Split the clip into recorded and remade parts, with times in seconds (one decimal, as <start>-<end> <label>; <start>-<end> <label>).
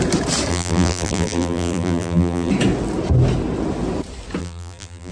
0.0-0.5 recorded; 0.5-2.5 remade; 2.5-4.4 recorded; 4.4-5.1 remade